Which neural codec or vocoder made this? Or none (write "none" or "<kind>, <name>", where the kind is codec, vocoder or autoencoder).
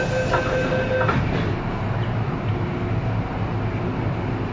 none